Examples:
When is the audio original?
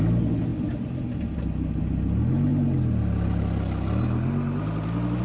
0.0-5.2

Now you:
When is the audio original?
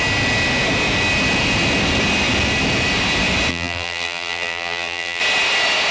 0.0-3.5; 5.2-5.9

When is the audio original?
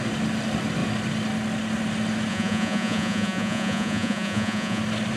0.0-2.3; 4.8-5.2